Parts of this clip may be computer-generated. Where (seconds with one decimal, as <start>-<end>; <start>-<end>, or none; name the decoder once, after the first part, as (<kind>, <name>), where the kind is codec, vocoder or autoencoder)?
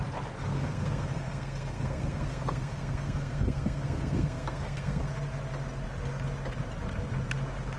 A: 0.5-5.1 (codec, SNAC)